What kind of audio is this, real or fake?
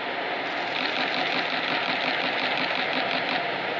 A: real